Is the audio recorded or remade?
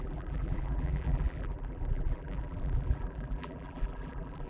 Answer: remade